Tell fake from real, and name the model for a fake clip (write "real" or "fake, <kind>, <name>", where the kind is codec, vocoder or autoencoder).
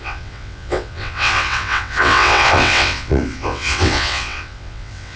fake, vocoder, WaveNeXt